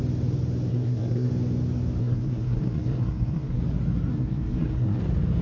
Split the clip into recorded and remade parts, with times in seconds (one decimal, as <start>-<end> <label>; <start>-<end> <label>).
0.0-0.7 recorded; 0.7-1.3 remade; 1.3-2.0 recorded; 2.0-3.6 remade; 3.6-4.1 recorded; 4.1-5.0 remade; 5.0-5.4 recorded